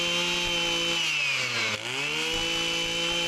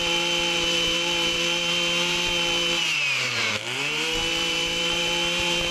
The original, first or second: first